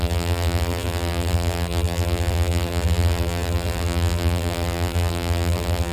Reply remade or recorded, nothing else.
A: remade